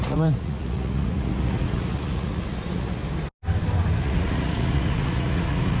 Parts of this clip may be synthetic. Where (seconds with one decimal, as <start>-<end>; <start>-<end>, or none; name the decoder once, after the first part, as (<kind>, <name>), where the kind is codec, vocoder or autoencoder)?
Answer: 0.0-3.0 (vocoder, Vocos); 4.0-5.8